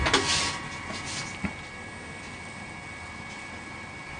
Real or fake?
real